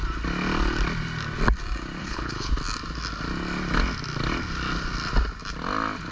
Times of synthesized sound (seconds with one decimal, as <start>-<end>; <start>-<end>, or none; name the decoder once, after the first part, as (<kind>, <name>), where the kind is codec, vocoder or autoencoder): 2.0-2.5 (codec, HILCodec)